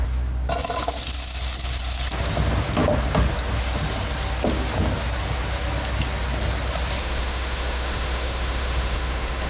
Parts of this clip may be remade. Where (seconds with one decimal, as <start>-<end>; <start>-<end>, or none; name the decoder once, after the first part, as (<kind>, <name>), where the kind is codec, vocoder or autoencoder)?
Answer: 7.0-9.5 (autoencoder, DAC-VAE)